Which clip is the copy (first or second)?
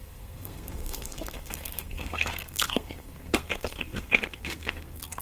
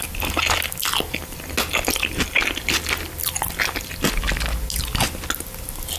first